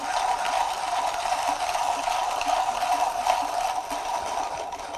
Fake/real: fake